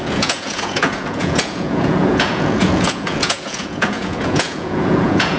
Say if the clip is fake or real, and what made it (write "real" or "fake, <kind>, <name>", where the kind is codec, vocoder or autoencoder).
fake, vocoder, Vocos